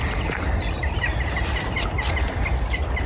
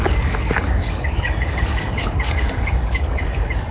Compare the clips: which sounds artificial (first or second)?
second